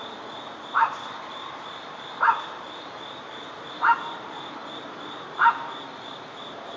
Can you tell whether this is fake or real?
fake